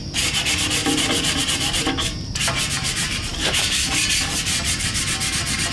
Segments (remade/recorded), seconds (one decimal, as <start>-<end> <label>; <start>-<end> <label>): 0.0-0.8 recorded; 0.8-1.4 remade; 1.4-2.8 recorded; 2.8-4.0 remade; 4.0-5.7 recorded